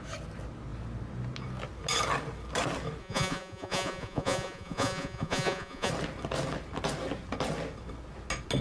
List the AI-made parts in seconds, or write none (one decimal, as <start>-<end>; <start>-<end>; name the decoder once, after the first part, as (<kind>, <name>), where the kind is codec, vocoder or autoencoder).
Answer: 3.0-5.9 (vocoder, Vocos)

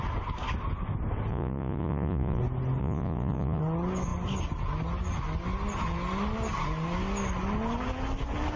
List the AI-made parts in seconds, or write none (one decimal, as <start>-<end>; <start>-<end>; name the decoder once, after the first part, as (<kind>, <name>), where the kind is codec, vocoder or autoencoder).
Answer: 1.3-2.4 (vocoder, Vocos); 2.8-3.6

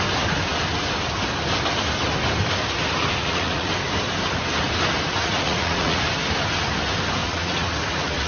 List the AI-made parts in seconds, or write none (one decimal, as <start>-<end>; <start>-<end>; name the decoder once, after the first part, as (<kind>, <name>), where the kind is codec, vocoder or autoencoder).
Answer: 3.2-3.7 (vocoder, Vocos); 5.2-6.0; 7.2-8.3

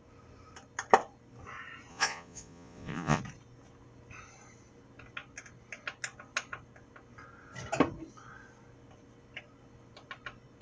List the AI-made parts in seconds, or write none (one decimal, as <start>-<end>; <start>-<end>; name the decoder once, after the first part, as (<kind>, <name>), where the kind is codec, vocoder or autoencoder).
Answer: 1.9-3.2 (vocoder, Vocos)

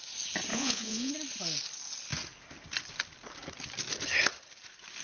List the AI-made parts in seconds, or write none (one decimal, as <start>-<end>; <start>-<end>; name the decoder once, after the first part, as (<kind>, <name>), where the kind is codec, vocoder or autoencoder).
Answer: 0.5-1.1 (vocoder, Vocos)

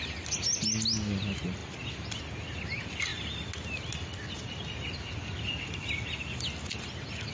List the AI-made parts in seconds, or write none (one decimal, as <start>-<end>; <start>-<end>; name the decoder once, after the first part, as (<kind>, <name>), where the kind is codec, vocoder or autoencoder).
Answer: none

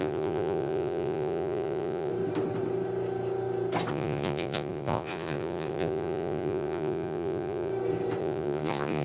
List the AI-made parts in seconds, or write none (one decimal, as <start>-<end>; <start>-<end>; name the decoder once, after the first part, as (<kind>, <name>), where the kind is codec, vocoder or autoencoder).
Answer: 0.0-2.1 (vocoder, Vocos); 3.9-7.7; 8.2-9.0